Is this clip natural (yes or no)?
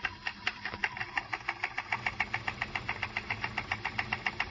yes